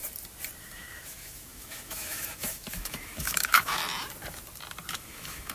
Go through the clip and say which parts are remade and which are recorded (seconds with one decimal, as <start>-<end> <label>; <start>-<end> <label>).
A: 0.0-0.6 recorded; 0.6-3.8 remade; 3.8-4.9 recorded; 4.9-5.5 remade